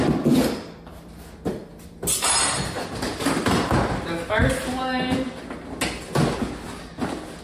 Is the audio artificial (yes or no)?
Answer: no